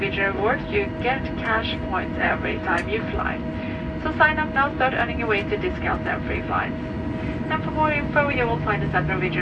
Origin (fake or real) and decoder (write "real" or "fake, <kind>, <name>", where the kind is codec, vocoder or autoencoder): real